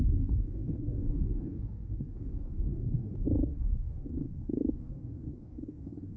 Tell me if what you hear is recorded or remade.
remade